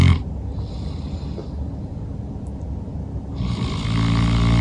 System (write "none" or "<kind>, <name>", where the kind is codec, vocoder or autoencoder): none